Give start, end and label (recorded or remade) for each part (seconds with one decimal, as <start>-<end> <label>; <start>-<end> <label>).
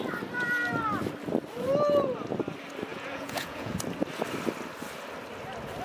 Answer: 0.0-2.9 recorded; 2.9-3.7 remade; 3.7-5.8 recorded